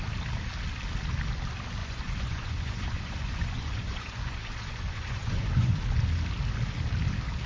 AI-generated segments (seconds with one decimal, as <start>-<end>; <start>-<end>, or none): 1.8-5.8